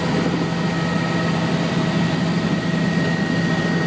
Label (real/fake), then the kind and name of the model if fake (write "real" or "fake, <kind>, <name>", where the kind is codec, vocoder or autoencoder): real